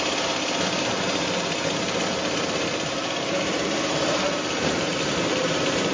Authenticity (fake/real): fake